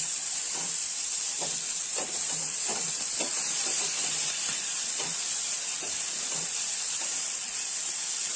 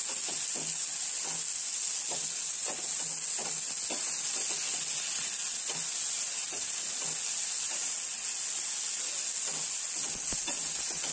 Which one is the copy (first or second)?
first